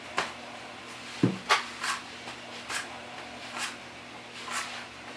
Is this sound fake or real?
real